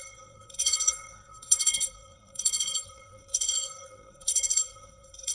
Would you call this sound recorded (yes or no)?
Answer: no